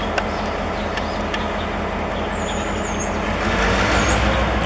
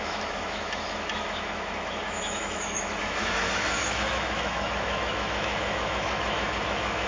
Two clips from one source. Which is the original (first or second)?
first